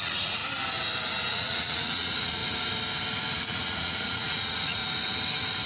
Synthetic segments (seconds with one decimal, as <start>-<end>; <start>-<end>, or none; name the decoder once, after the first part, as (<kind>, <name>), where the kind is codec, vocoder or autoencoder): 0.0-0.4 (vocoder, Vocos); 1.3-2.4; 3.4-4.8